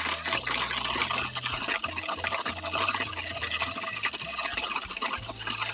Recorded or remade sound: recorded